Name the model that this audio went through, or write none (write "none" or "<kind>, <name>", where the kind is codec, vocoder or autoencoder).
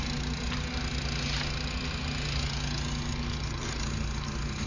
none